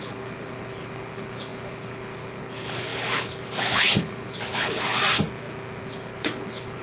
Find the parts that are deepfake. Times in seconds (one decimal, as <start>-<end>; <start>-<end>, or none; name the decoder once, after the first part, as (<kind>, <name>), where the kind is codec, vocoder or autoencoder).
0.0-5.0 (codec, HILCodec); 5.8-6.8